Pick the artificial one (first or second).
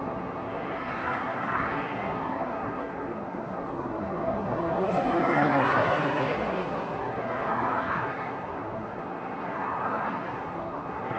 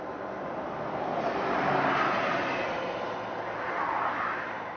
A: first